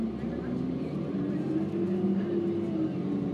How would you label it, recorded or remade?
recorded